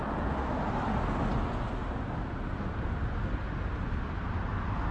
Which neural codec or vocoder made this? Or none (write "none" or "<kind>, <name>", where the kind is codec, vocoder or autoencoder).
none